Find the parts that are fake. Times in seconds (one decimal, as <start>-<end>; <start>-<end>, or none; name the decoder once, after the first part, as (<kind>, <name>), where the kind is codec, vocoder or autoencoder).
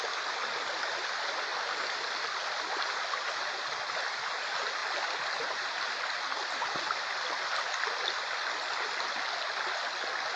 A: none